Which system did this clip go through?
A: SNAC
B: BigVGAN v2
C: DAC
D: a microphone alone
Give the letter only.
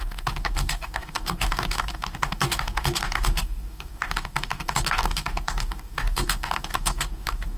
C